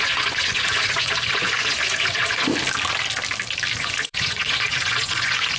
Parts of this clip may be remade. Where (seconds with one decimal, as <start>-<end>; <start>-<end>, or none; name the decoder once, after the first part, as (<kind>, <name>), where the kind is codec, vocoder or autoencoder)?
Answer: 0.0-2.5 (vocoder, Vocos); 3.8-5.6